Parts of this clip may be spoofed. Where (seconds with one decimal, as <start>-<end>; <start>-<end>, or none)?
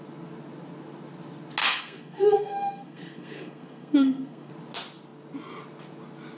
1.6-4.5